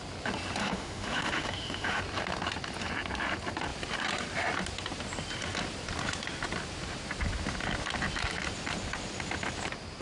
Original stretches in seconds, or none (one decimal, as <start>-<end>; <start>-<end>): 0.0-0.6; 2.0-10.0